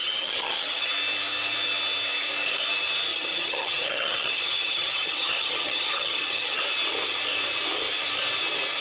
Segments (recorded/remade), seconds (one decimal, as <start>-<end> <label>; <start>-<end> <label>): 0.0-0.9 remade; 0.9-3.1 recorded; 3.1-6.6 remade; 6.6-8.8 recorded